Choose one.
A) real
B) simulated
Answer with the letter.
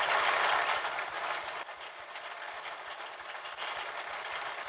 A